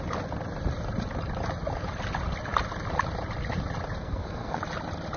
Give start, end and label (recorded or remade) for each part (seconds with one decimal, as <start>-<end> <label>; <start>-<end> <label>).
0.0-4.0 recorded; 4.0-4.6 remade; 4.6-5.2 recorded